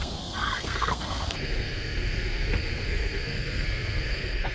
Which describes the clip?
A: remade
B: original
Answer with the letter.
A